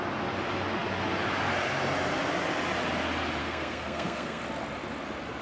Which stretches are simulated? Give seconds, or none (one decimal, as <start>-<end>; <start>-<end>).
3.4-4.4